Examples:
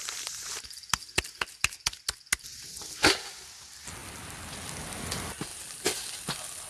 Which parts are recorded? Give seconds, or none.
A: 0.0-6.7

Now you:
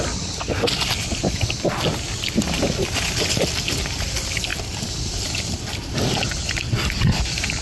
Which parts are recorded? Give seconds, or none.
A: 0.0-7.6

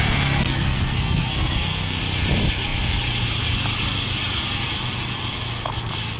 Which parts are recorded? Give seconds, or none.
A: 2.0-6.2

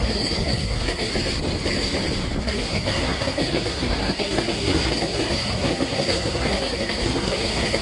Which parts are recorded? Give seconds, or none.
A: 1.1-2.4

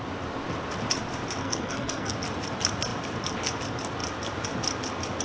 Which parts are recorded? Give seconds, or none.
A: 0.0-1.4; 2.1-5.2

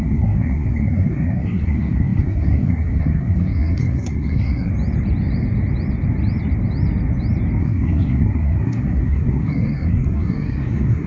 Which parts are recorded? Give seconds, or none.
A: 4.7-7.6